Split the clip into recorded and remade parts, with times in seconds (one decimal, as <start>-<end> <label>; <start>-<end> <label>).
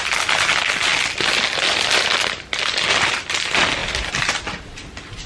0.0-0.9 recorded; 0.9-3.1 remade; 3.1-5.3 recorded